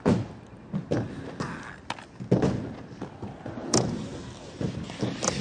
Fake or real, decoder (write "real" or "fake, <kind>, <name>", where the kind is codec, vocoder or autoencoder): real